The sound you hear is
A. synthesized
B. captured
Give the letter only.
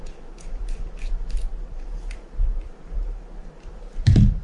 A